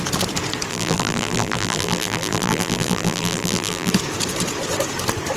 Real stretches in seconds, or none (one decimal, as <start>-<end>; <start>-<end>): 0.0-0.7; 3.9-5.4